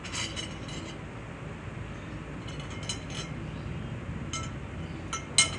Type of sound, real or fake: real